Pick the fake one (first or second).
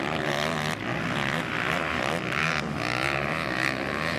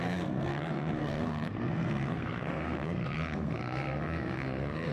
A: second